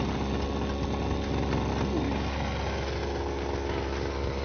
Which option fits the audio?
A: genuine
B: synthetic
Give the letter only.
A